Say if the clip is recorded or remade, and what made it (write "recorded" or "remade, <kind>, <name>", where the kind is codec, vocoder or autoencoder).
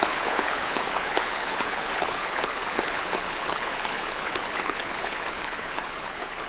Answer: remade, codec, HILCodec